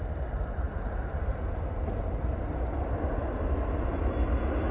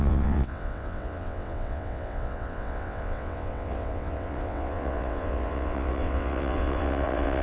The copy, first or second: second